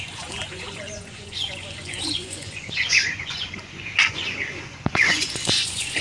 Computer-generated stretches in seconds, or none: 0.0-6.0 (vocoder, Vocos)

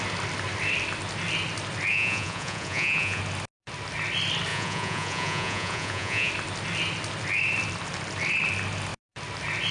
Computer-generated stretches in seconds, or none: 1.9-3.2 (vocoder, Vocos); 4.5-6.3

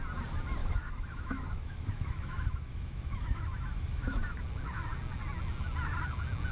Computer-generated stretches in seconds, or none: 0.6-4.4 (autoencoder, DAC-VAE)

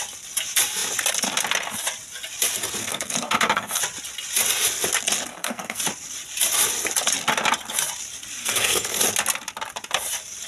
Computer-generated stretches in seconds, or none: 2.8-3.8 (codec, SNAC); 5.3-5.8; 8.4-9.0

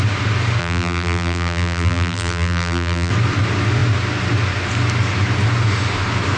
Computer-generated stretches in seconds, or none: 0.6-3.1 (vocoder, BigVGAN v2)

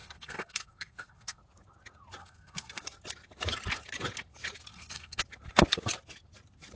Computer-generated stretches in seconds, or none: 0.0-1.4 (codec, SNAC); 2.2-2.8; 4.7-5.2